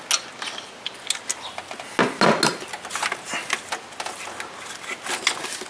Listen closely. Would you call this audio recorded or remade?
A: recorded